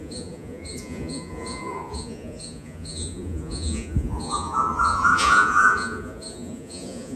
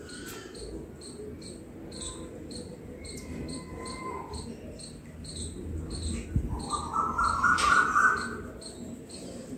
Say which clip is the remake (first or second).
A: first